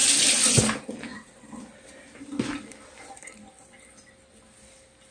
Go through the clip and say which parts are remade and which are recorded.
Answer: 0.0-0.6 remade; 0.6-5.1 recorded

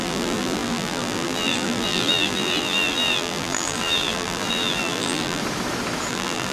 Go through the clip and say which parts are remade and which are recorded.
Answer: 0.0-5.4 remade; 5.4-6.1 recorded; 6.1-6.5 remade

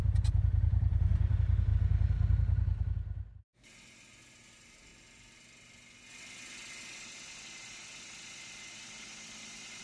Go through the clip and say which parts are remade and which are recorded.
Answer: 0.0-1.7 remade; 1.7-4.3 recorded; 4.3-4.9 remade; 4.9-9.8 recorded